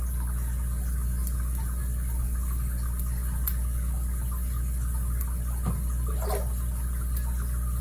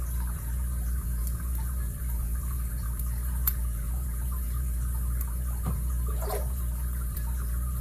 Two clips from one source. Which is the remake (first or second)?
second